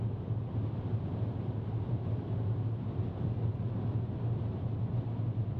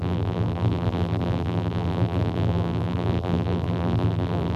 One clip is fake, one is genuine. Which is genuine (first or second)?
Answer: first